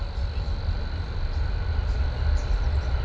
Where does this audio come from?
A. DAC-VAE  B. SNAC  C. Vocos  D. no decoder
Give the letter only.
D